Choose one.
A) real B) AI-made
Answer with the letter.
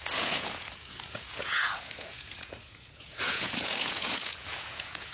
B